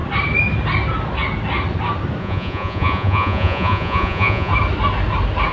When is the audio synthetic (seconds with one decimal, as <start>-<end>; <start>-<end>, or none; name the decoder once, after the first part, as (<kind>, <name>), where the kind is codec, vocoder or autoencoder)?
2.2-4.5 (vocoder, Vocos)